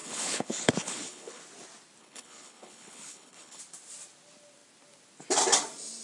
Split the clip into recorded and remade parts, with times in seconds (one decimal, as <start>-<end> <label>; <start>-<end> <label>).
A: 0.0-1.4 remade; 1.4-2.0 recorded; 2.0-3.6 remade; 3.6-6.0 recorded